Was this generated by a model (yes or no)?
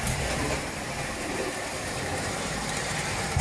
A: yes